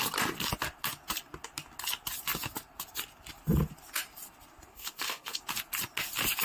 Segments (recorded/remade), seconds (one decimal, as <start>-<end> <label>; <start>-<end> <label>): 0.0-4.7 recorded; 4.7-5.4 remade; 5.4-6.4 recorded